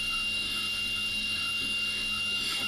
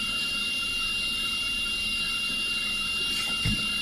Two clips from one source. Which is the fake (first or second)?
first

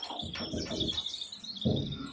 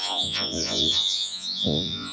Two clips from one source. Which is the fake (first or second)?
second